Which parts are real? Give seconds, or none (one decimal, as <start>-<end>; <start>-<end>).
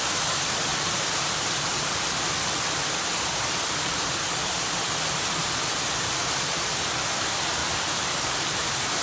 0.0-0.7; 5.5-7.6; 8.3-9.0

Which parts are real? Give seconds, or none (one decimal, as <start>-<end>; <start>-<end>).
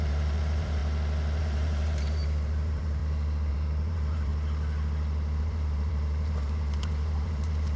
0.8-1.4; 3.0-3.5; 4.3-5.4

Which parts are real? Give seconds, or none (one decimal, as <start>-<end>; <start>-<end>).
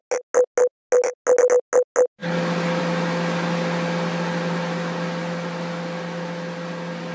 0.0-7.1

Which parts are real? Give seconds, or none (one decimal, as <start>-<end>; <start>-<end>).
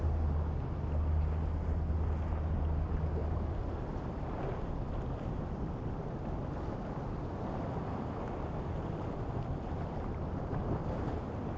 0.0-11.6